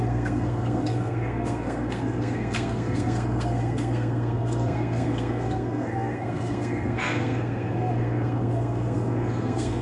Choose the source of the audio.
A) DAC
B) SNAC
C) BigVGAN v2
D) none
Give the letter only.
B